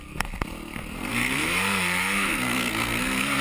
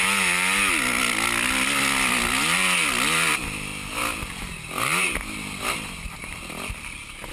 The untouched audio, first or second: second